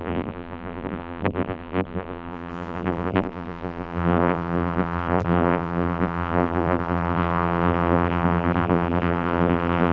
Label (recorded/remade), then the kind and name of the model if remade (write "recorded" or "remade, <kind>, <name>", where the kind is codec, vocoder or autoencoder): remade, vocoder, BigVGAN v2